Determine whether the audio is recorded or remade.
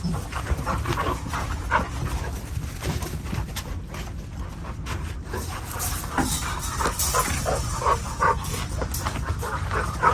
recorded